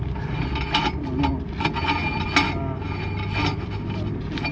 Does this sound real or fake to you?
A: real